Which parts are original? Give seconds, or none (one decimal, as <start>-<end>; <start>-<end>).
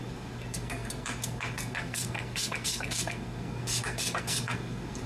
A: none